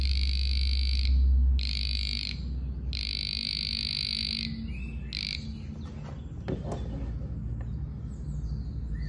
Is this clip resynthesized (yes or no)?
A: no